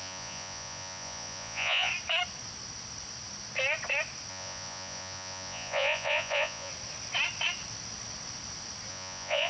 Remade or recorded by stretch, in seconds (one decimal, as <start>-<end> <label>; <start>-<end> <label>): 0.0-1.9 remade; 1.9-4.3 recorded; 4.3-6.7 remade; 6.7-8.9 recorded; 8.9-9.5 remade